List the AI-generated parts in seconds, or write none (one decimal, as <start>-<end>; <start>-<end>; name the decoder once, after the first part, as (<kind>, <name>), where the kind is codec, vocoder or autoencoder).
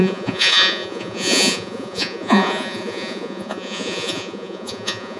0.0-5.2 (vocoder, Vocos)